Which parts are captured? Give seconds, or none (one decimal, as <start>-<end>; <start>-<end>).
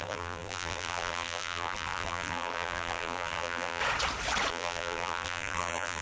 3.8-4.5